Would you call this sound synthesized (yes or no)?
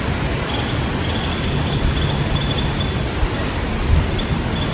no